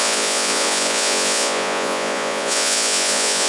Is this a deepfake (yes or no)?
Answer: yes